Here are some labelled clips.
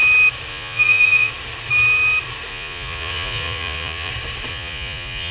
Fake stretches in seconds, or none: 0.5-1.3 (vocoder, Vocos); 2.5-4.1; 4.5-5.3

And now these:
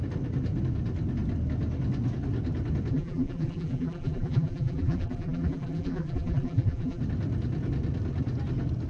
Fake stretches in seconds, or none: 2.9-7.0 (vocoder, BigVGAN v2)